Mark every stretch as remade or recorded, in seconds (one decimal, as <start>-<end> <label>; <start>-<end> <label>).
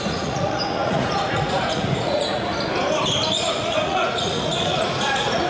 0.0-2.5 remade; 2.5-3.3 recorded; 3.3-5.5 remade